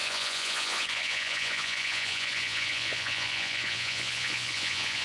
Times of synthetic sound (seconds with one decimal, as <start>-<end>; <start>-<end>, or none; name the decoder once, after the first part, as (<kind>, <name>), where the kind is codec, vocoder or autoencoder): 0.0-5.0 (vocoder, Vocos)